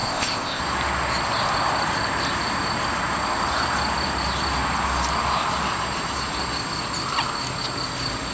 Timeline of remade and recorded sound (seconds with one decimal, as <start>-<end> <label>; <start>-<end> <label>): 0.0-0.6 remade; 0.6-8.3 recorded